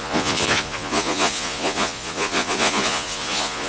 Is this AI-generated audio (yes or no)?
yes